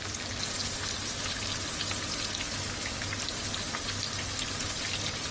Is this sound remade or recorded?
recorded